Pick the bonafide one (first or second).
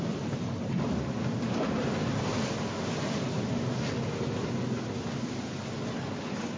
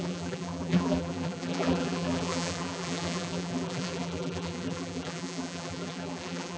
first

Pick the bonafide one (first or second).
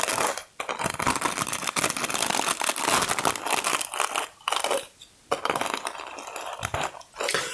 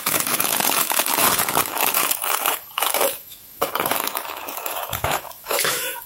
first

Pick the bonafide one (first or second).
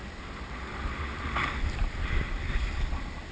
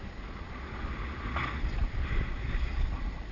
first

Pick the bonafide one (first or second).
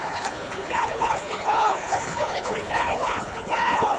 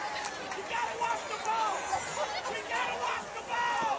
second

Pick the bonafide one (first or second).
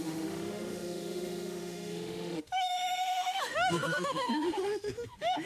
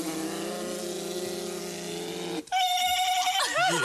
second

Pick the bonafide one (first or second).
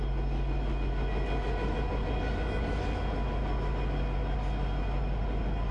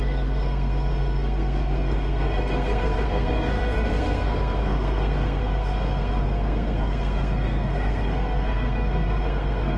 first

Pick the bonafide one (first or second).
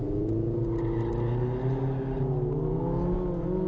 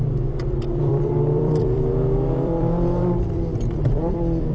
first